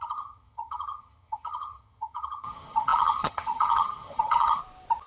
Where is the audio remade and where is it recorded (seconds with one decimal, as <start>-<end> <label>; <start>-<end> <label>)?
0.0-4.6 remade; 4.6-5.1 recorded